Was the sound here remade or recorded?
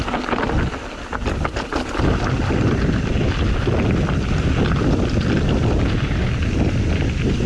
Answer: recorded